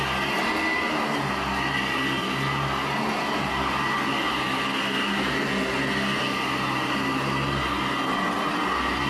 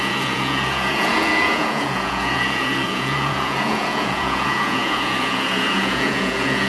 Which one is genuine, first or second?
first